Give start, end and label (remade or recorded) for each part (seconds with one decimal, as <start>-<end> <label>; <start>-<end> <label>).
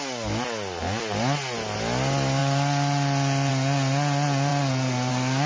0.0-5.5 recorded